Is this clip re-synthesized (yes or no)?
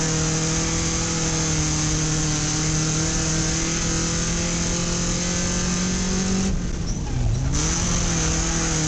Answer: no